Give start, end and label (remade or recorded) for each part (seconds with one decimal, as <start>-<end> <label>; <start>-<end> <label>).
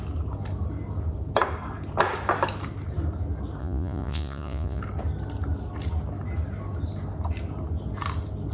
0.0-3.6 recorded; 3.6-4.8 remade; 4.8-8.5 recorded